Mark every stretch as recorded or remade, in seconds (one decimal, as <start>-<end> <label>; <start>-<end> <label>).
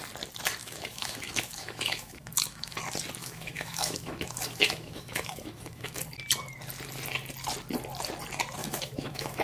0.0-0.6 recorded; 0.6-2.8 remade; 2.8-3.2 recorded; 3.2-6.0 remade; 6.0-8.6 recorded; 8.6-9.4 remade